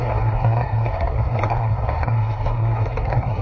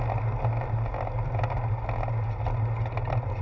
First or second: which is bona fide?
second